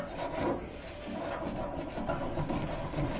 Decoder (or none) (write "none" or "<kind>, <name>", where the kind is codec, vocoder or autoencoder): none